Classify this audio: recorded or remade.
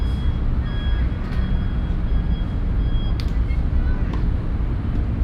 recorded